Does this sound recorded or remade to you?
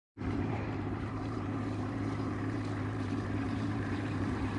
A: remade